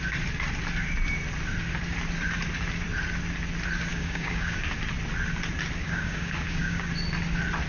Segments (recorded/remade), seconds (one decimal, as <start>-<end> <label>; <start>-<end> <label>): 0.0-3.9 recorded; 3.9-4.6 remade; 4.6-5.8 recorded; 5.8-6.9 remade; 6.9-7.7 recorded